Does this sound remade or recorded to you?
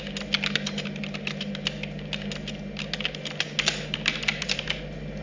recorded